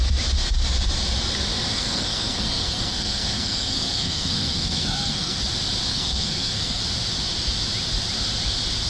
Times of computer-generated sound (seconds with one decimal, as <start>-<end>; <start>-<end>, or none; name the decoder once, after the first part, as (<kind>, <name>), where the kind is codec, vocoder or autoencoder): 1.7-5.4 (codec, SNAC); 5.9-6.8